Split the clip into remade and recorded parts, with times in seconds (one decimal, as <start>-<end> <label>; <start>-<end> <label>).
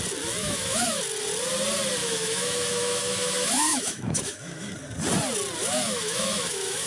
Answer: 0.0-0.4 recorded; 0.4-1.0 remade; 1.0-2.0 recorded; 2.0-4.7 remade; 4.7-5.6 recorded; 5.6-6.9 remade